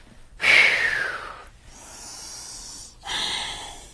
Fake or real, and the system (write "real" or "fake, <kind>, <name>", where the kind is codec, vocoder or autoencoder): real